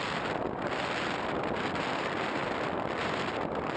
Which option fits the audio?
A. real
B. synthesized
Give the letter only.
B